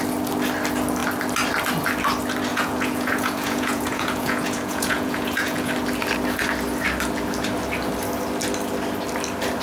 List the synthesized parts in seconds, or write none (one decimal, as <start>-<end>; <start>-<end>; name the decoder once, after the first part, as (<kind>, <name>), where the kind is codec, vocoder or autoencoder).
2.5-5.7 (vocoder, Vocos)